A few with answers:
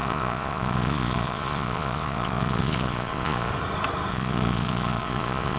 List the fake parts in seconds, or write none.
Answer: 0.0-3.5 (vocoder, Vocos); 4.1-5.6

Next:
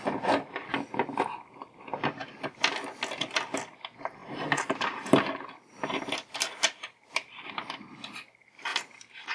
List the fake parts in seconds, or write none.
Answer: 4.2-7.1 (vocoder, BigVGAN v2); 8.7-9.3

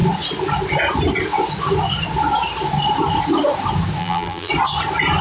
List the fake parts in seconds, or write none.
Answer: 4.0-4.5 (vocoder, BigVGAN v2)